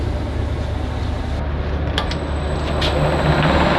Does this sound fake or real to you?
real